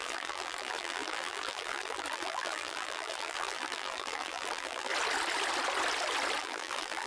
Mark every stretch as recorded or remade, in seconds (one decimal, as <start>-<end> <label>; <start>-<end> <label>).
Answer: 0.0-4.9 remade; 4.9-6.4 recorded; 6.4-7.1 remade

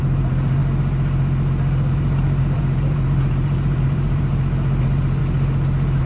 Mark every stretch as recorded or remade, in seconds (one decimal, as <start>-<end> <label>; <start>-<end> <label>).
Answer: 0.0-0.6 remade; 0.6-1.9 recorded; 1.9-4.3 remade; 4.3-4.8 recorded; 4.8-5.2 remade; 5.2-6.0 recorded